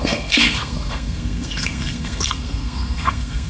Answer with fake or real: fake